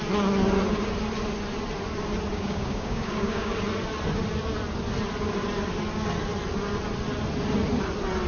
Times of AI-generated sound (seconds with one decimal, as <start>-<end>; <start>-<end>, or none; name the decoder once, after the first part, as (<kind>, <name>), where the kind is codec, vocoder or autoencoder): 2.3-3.5 (codec, DAC)

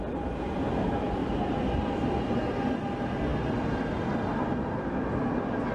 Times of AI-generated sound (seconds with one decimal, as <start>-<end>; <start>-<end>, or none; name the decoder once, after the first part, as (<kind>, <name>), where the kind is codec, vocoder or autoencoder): 1.2-1.9 (vocoder, BigVGAN v2)

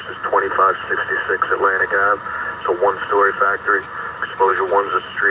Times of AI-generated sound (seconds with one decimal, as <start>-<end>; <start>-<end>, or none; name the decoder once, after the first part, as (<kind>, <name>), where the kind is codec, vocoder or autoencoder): none

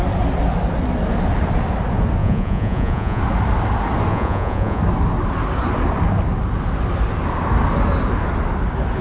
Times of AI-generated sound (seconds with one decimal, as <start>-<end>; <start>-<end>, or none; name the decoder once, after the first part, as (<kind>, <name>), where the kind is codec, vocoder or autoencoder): 2.2-3.2 (vocoder, Vocos); 4.1-4.8